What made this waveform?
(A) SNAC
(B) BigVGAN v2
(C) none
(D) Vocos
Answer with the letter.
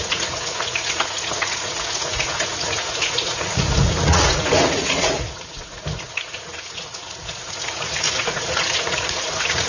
D